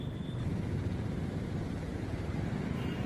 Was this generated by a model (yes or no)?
yes